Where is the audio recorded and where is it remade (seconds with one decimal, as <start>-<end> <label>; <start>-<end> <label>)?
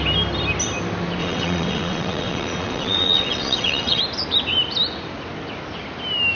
0.0-1.2 recorded; 1.2-4.0 remade; 4.0-6.3 recorded